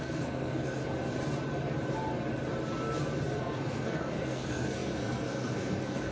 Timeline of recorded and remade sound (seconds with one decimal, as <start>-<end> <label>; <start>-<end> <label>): 0.0-0.8 remade; 0.8-3.4 recorded; 3.4-6.1 remade